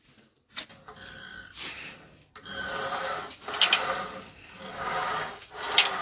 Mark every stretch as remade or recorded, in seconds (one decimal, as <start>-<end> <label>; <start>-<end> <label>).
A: 0.0-4.7 recorded; 4.7-5.5 remade; 5.5-6.0 recorded